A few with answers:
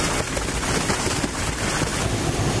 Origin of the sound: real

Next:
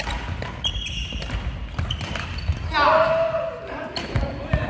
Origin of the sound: real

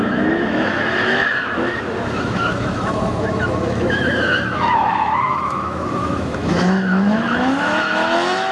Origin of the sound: fake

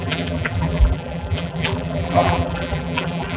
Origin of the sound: fake